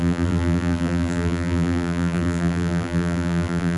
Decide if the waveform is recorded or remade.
remade